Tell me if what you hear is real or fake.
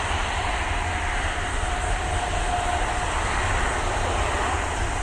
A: real